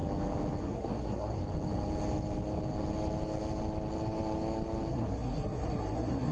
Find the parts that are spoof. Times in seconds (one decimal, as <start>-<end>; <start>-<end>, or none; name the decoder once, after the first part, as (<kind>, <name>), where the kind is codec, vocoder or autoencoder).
0.6-1.4 (codec, SNAC); 4.9-6.3